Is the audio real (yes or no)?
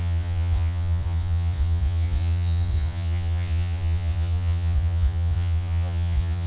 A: no